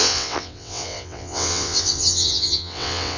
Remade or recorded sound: remade